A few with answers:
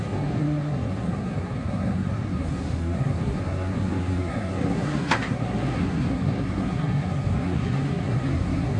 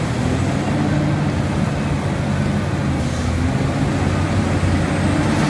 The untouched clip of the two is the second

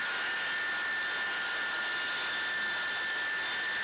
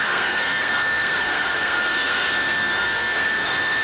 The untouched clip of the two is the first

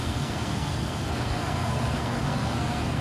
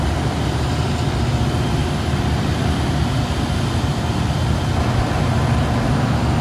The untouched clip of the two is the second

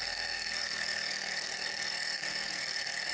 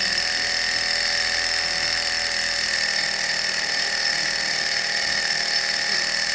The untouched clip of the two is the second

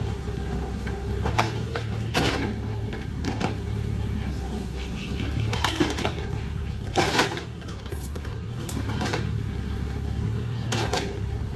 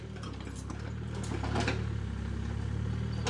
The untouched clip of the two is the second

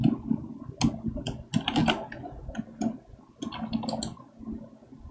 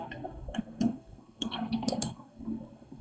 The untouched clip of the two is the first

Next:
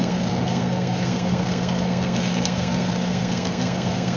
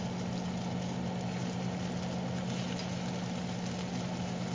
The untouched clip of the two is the second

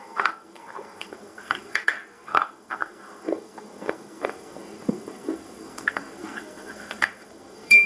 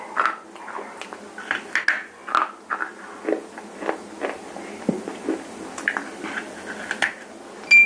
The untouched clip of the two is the second